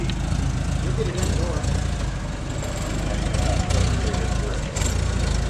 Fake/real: real